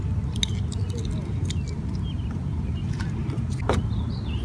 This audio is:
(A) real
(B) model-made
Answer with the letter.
A